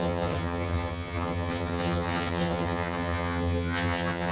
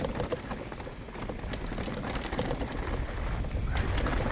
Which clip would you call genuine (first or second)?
second